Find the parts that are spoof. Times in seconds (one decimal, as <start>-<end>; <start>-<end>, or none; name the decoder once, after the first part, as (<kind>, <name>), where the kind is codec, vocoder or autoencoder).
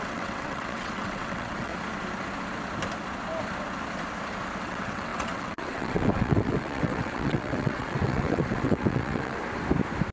0.0-1.7 (vocoder, WaveNeXt); 4.6-9.4